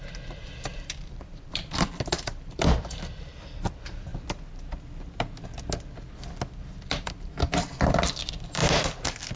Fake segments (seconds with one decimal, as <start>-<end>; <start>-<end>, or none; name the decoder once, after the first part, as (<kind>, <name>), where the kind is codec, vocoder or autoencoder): 0.0-4.1 (vocoder, BigVGAN v2); 6.1-8.6